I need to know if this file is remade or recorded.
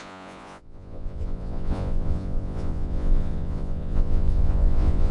remade